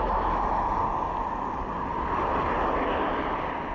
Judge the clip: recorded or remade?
recorded